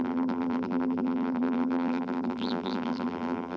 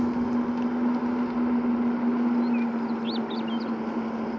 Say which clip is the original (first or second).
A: second